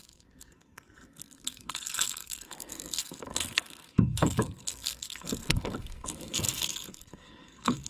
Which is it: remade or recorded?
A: remade